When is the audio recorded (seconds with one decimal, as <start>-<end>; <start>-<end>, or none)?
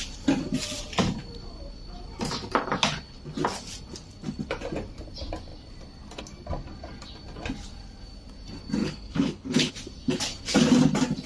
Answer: 0.0-8.8; 9.7-11.3